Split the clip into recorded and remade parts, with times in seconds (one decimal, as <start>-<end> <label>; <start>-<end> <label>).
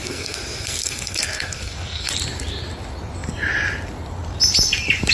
0.0-2.1 remade; 2.1-5.1 recorded